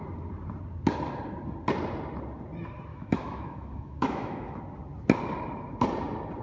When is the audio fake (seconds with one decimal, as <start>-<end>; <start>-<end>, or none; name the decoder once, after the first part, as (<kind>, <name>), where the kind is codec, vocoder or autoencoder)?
2.9-4.6 (autoencoder, DAC-VAE)